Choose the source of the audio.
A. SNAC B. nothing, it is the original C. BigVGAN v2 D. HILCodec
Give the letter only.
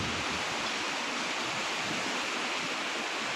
B